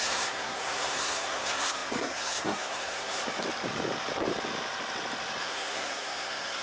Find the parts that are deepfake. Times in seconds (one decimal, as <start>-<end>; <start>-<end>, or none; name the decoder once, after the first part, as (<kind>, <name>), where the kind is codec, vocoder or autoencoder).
0.0-3.2 (codec, SNAC); 5.4-6.6